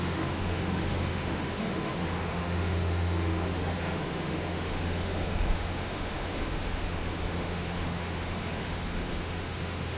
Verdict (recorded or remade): remade